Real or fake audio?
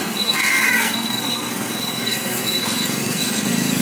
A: fake